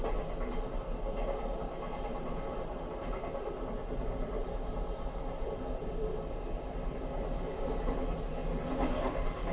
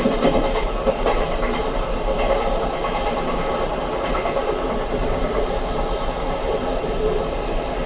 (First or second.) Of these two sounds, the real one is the first